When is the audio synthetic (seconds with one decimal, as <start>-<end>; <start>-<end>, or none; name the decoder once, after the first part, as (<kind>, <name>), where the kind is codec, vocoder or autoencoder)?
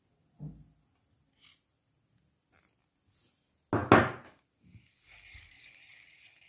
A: none